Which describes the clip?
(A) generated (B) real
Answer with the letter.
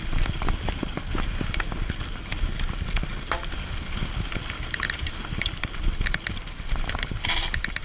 B